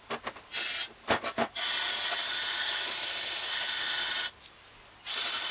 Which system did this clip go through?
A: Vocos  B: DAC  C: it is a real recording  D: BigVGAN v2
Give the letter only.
C